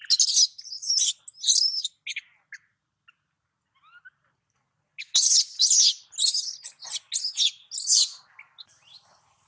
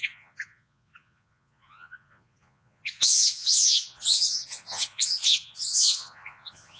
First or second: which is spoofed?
second